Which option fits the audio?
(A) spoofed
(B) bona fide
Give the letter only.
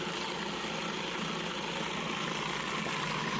B